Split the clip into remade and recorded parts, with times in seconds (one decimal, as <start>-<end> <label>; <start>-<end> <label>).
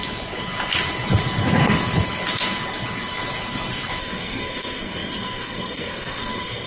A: 0.0-4.0 recorded; 4.0-6.7 remade